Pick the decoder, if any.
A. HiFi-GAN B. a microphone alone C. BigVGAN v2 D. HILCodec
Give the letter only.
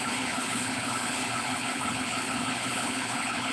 D